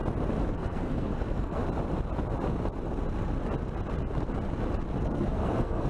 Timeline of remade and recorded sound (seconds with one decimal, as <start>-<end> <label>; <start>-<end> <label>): 0.0-0.5 recorded; 0.5-1.6 remade; 1.6-5.0 recorded; 5.0-5.9 remade